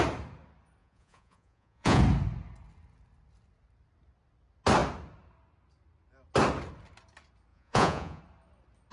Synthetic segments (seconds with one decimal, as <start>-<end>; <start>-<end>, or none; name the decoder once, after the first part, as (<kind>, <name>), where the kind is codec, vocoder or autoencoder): 0.8-2.0 (vocoder, Vocos); 7.5-8.2